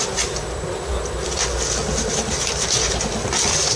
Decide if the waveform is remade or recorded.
recorded